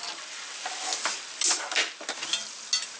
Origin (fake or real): real